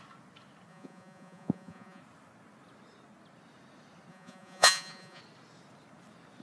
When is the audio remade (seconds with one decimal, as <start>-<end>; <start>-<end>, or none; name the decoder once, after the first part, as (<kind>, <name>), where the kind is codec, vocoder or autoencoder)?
0.7-2.0 (vocoder, Vocos); 4.1-5.2